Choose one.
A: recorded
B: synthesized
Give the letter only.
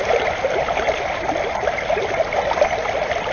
A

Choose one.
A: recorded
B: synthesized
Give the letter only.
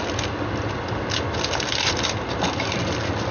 A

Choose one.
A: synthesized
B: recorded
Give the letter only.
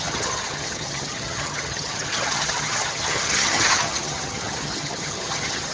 A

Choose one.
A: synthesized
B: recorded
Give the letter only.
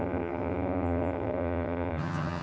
A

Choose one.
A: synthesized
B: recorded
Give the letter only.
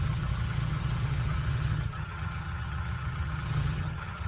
A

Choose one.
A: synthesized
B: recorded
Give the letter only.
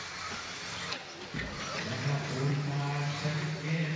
B